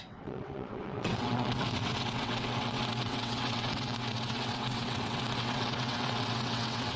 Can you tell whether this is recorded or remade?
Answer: remade